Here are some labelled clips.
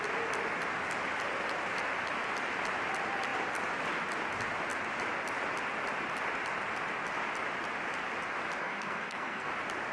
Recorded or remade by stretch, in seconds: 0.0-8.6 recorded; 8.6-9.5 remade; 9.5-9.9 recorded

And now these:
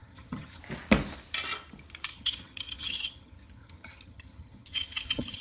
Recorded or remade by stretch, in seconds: 0.0-0.6 remade; 0.6-2.1 recorded; 2.1-5.4 remade

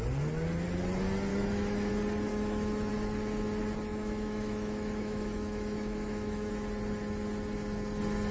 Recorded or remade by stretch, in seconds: 0.0-1.3 recorded; 1.3-1.9 remade; 1.9-2.3 recorded; 2.3-2.9 remade; 2.9-3.9 recorded; 3.9-6.5 remade; 6.5-8.3 recorded